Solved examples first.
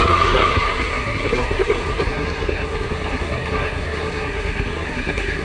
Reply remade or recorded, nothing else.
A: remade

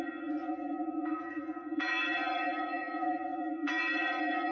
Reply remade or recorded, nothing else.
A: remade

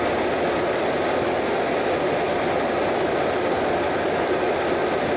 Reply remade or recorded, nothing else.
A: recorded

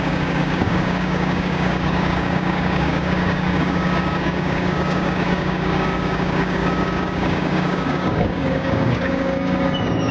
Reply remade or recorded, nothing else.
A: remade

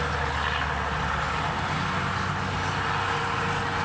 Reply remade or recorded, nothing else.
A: recorded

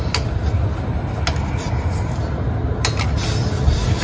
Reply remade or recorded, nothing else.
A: recorded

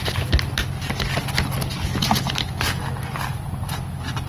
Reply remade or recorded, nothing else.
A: recorded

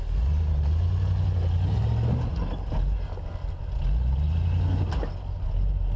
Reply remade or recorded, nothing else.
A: recorded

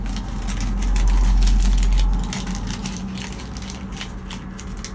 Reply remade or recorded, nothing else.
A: recorded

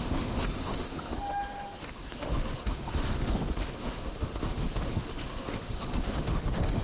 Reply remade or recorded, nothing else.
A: remade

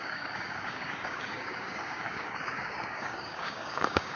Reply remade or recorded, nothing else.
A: remade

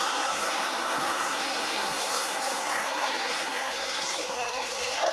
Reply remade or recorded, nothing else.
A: remade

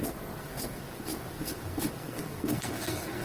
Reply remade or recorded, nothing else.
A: remade